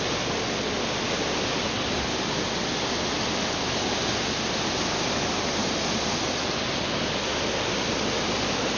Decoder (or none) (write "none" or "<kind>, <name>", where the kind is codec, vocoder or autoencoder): none